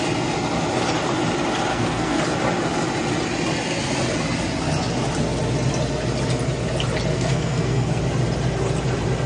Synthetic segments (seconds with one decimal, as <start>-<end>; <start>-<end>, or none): 1.7-2.2; 7.1-8.0